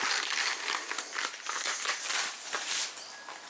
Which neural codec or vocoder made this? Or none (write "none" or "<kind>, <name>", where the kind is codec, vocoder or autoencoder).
none